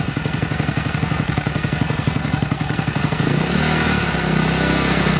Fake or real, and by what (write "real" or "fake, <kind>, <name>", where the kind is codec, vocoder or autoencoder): fake, codec, SNAC